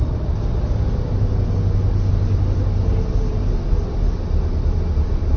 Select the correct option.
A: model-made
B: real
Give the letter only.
B